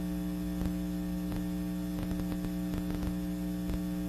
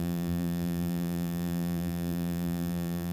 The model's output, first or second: second